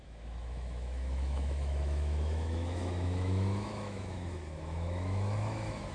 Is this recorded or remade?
remade